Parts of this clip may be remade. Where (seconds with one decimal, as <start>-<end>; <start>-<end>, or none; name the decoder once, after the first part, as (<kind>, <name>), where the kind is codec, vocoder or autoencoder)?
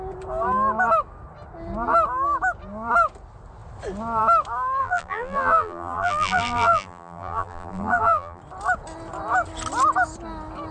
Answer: 4.8-8.4 (vocoder, BigVGAN v2)